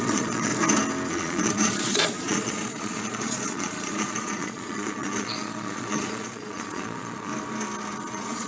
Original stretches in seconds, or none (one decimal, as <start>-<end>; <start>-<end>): 0.5-1.1; 7.3-8.1